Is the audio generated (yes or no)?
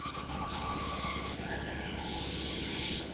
yes